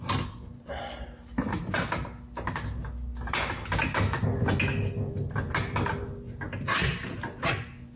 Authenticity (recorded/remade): recorded